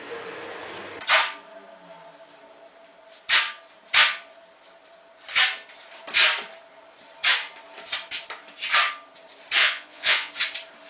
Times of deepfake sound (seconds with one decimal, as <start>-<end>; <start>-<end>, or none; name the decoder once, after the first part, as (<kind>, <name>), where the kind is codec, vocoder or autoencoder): 9.6-10.3 (vocoder, Vocos)